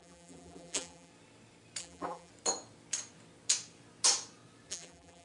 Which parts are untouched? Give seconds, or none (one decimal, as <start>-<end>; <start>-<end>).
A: 1.1-1.8; 2.3-4.7